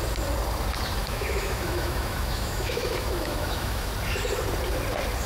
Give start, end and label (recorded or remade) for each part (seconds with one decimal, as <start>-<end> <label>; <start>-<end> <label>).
0.0-1.0 recorded; 1.0-3.9 remade; 3.9-5.3 recorded